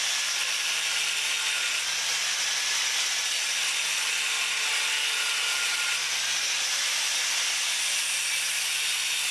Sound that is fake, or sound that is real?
real